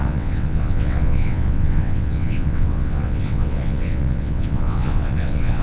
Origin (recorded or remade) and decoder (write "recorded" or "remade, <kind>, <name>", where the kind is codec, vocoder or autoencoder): remade, vocoder, WaveNeXt